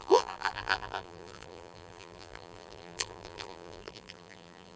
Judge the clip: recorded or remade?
remade